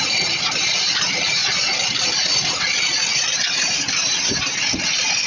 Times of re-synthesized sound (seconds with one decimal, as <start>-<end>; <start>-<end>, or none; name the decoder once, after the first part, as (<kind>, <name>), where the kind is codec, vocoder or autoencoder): none